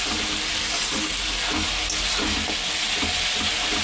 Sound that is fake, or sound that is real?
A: real